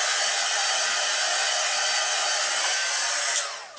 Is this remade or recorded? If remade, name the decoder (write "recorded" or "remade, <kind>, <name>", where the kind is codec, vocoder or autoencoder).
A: recorded